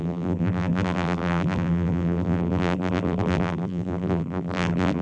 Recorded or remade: remade